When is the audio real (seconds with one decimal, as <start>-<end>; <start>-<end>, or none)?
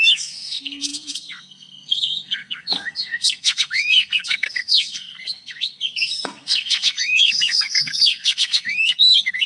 none